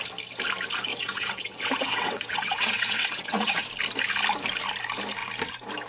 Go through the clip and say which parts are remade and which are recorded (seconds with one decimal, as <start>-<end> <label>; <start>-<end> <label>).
0.0-0.9 recorded; 0.9-3.7 remade; 3.7-5.9 recorded